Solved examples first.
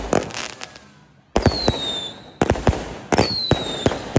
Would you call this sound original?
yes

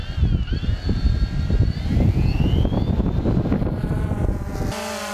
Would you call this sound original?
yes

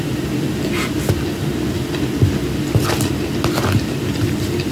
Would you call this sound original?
yes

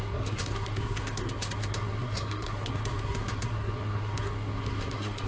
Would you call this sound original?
no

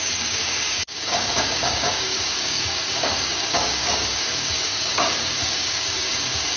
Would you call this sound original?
no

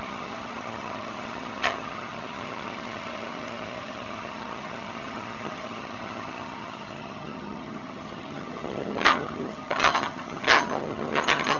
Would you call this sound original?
no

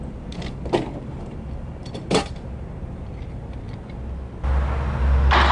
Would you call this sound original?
yes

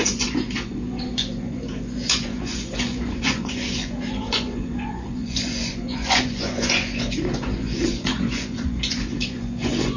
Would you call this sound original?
no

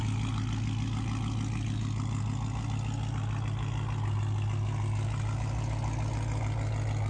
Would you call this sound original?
yes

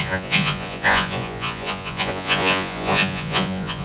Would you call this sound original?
no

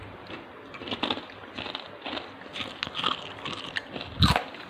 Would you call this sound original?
yes